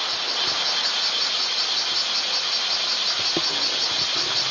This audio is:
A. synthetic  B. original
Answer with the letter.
B